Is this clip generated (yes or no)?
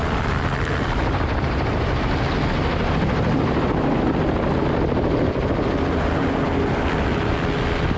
no